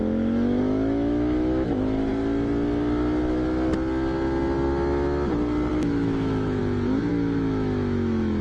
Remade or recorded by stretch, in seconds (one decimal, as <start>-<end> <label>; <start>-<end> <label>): 0.0-2.1 remade; 2.1-5.7 recorded; 5.7-6.6 remade; 6.6-7.1 recorded; 7.1-8.4 remade